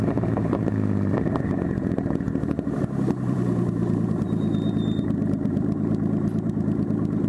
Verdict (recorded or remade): remade